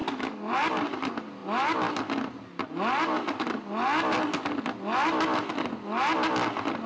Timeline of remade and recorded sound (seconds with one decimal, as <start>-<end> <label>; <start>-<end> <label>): 0.0-0.5 remade; 0.5-6.9 recorded